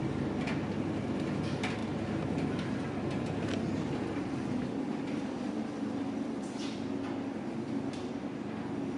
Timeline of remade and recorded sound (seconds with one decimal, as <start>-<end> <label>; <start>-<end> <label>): 0.0-9.0 recorded